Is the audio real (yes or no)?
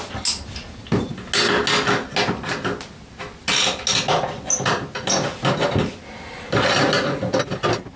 yes